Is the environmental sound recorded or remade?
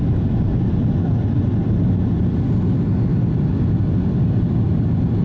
recorded